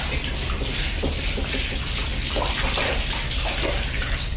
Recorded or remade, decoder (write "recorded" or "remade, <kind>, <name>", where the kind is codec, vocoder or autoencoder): recorded